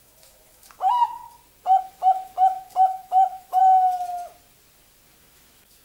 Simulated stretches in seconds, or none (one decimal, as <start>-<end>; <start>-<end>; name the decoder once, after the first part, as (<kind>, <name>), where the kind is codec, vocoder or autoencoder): 0.0-1.2 (autoencoder, DAC-VAE); 1.8-3.6; 5.2-5.8